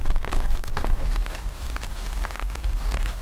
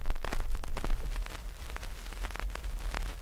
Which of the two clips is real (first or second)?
second